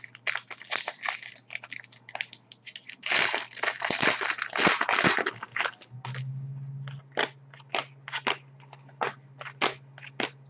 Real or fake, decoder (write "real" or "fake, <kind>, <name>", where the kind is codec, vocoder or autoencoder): real